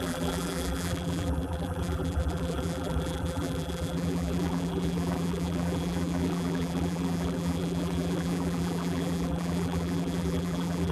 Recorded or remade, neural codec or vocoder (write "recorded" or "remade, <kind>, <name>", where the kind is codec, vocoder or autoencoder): remade, vocoder, BigVGAN v2